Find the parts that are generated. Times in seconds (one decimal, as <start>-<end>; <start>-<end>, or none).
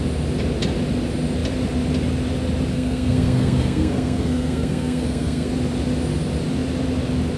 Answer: 2.7-5.5